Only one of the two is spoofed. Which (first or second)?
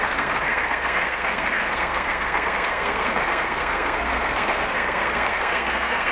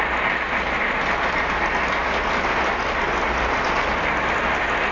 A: first